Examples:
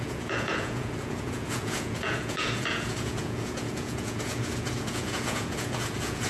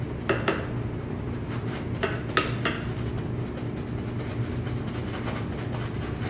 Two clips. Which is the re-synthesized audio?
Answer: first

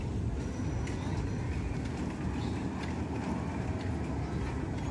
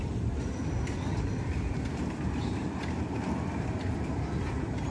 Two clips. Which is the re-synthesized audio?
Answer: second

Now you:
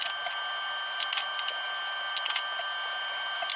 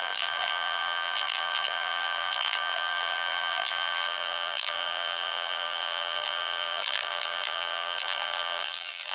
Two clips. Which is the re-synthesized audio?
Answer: second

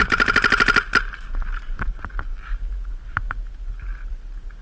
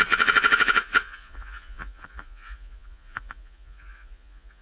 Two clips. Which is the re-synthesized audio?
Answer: second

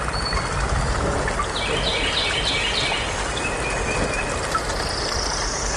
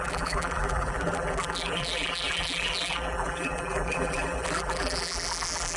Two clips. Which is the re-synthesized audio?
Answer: second